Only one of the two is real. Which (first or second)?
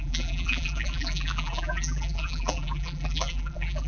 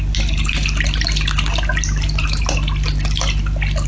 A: second